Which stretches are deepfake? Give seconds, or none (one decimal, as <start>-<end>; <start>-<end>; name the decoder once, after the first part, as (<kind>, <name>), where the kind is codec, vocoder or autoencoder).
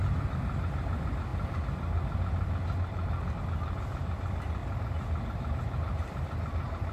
4.6-6.9 (vocoder, BigVGAN v2)